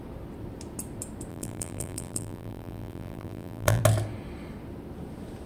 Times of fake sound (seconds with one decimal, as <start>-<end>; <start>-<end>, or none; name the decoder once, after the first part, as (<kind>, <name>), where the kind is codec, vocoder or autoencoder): 1.3-3.8 (vocoder, BigVGAN v2)